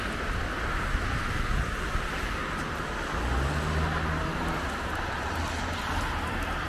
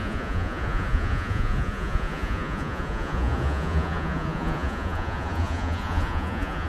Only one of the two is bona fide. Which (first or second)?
first